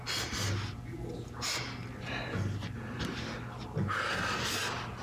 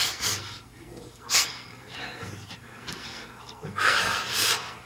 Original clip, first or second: first